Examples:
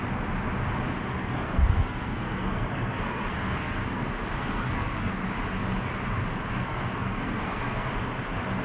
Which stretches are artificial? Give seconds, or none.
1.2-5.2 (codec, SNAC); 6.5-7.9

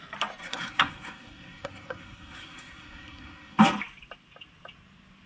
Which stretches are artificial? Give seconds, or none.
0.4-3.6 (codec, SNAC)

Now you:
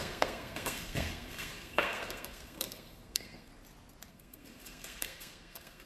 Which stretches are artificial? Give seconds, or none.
0.0-3.5 (codec, SNAC); 4.1-5.9

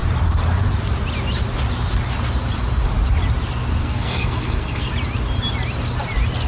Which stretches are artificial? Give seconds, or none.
3.8-4.9 (codec, SNAC)